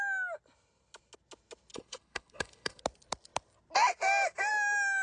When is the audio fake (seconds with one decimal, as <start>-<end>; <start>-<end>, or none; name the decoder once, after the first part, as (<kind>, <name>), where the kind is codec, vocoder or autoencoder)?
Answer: 1.7-2.8 (codec, HILCodec)